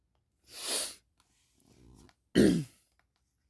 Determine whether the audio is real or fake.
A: real